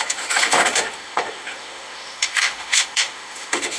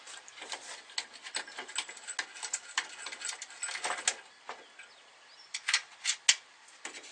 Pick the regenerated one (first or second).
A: first